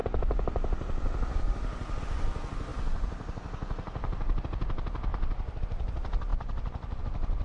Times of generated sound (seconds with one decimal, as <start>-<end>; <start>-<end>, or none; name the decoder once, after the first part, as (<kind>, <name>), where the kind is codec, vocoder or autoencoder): 2.7-4.4 (vocoder, BigVGAN v2); 5.1-5.6